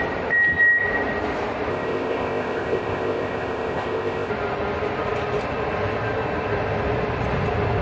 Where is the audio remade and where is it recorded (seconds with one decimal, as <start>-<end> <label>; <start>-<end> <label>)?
0.0-1.7 recorded; 1.7-4.3 remade; 4.3-7.8 recorded